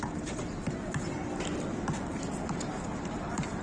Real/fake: real